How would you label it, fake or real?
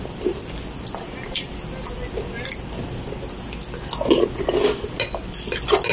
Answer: real